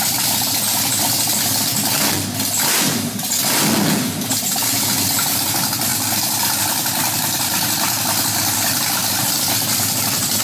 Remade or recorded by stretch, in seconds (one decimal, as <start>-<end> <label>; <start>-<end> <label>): 0.0-5.9 recorded; 5.9-10.4 remade